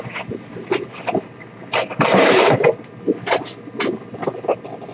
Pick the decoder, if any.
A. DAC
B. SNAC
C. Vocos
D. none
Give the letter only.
D